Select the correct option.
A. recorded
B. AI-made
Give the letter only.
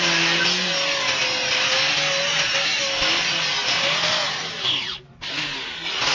A